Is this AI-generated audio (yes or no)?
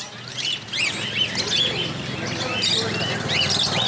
no